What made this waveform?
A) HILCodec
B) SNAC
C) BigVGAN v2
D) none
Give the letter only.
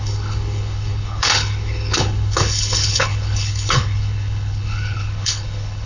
A